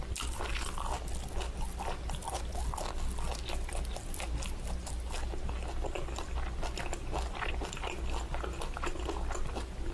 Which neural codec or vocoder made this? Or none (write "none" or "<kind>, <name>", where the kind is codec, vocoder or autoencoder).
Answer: none